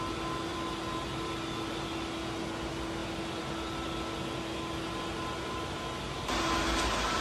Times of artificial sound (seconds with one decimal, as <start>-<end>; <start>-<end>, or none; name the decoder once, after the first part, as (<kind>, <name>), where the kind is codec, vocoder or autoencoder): none